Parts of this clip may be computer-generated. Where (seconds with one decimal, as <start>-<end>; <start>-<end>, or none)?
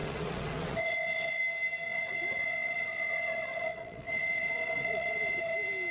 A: 0.0-1.4; 1.9-5.4